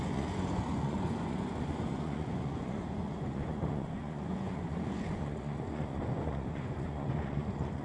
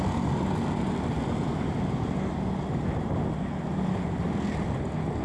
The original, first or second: second